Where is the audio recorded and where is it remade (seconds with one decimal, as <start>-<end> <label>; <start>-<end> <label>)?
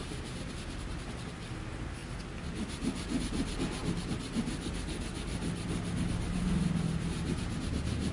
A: 0.0-8.1 recorded